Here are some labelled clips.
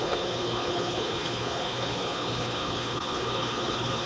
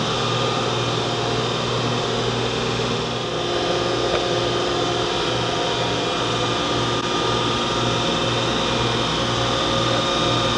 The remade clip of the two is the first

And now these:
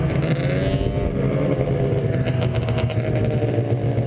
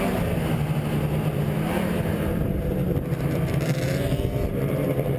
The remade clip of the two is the second